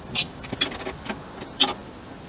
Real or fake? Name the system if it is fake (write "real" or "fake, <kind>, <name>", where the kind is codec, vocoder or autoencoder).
real